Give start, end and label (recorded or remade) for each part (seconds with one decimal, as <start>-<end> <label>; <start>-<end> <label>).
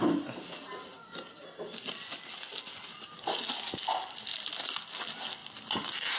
0.0-6.2 recorded